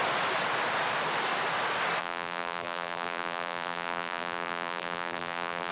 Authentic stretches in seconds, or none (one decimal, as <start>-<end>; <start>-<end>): 0.0-2.0